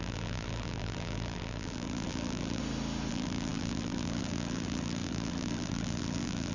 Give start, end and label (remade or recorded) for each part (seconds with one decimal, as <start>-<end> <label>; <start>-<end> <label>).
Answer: 0.0-2.6 remade; 2.6-3.1 recorded; 3.1-6.5 remade